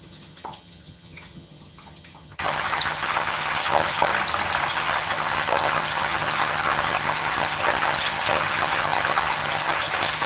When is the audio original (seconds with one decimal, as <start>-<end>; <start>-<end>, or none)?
4.1-4.7